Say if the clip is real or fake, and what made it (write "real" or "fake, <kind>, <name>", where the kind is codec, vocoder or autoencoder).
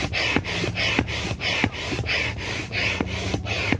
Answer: real